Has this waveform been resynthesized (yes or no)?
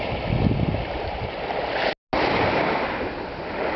no